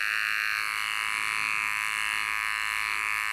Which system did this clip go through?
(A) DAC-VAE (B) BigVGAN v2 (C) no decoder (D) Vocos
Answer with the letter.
C